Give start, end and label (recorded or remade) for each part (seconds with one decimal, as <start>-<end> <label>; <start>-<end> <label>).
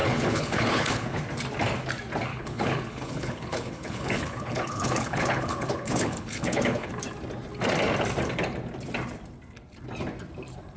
0.0-1.2 remade; 1.2-2.3 recorded; 2.3-6.9 remade; 6.9-10.8 recorded